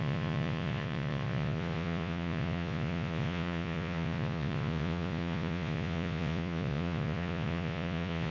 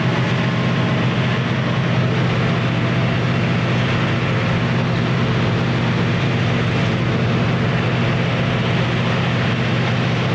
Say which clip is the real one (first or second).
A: second